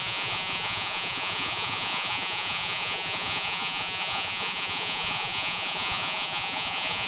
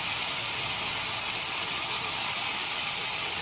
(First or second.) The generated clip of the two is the first